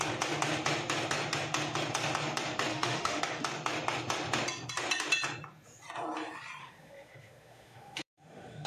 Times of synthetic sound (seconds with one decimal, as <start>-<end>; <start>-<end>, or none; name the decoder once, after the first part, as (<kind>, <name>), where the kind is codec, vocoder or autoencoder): 2.7-3.2 (autoencoder, DAC-VAE); 6.6-8.7